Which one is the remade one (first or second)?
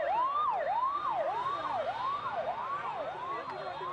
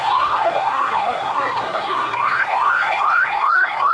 second